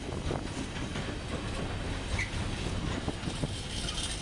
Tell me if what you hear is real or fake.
real